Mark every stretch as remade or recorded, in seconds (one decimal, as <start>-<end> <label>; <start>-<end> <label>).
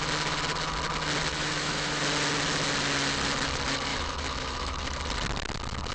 0.0-1.3 recorded; 1.3-2.0 remade; 2.0-3.9 recorded; 3.9-5.0 remade; 5.0-5.9 recorded